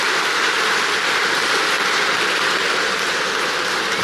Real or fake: real